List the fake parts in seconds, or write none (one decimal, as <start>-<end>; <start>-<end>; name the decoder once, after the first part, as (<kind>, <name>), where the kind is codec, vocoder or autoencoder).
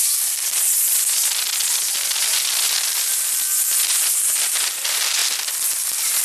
none